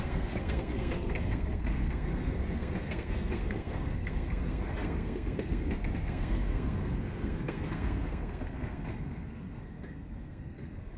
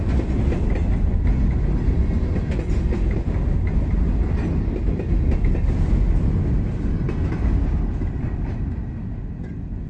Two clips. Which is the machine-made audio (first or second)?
first